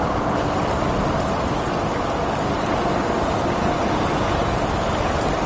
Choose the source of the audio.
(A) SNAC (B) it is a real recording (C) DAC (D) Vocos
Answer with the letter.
B